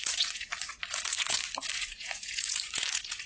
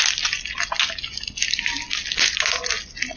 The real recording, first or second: second